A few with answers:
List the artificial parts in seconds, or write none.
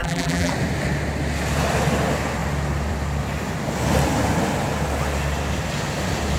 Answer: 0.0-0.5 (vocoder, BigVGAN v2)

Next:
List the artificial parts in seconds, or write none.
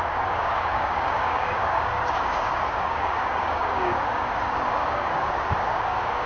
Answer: 0.0-6.3 (codec, DAC)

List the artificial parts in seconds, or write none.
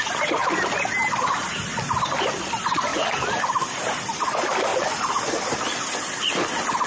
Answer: 0.0-0.4 (vocoder, BigVGAN v2); 1.2-2.9; 3.4-4.7; 5.6-6.9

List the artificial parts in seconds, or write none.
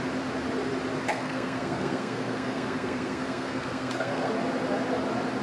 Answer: 1.1-4.3 (codec, SNAC)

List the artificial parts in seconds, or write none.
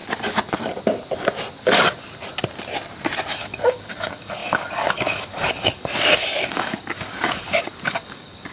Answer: 3.4-8.5 (codec, DAC)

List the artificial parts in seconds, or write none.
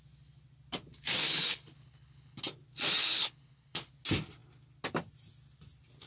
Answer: 1.2-2.4 (codec, HILCodec); 3.0-3.9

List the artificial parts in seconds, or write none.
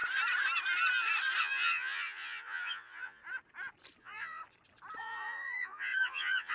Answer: 1.4-3.2 (vocoder, Vocos); 4.0-4.4; 5.0-6.5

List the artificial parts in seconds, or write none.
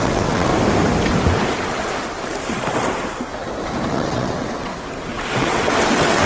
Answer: 0.0-0.5 (vocoder, WaveNeXt); 3.9-4.7; 5.3-6.3